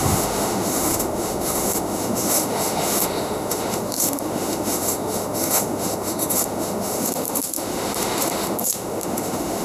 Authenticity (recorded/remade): remade